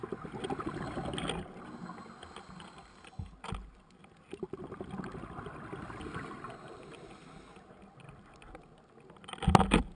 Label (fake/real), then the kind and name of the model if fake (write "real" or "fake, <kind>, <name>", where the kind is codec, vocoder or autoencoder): real